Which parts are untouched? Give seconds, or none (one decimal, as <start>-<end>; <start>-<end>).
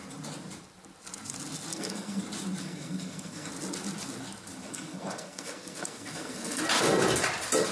0.0-1.7; 2.2-2.6; 3.5-4.6; 6.6-7.7